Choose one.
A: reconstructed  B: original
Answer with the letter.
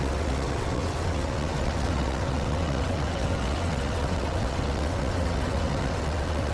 A